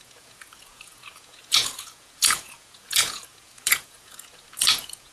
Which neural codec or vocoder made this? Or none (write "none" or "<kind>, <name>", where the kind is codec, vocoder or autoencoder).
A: vocoder, Vocos